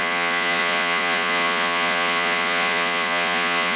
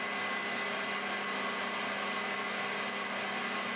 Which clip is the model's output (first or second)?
first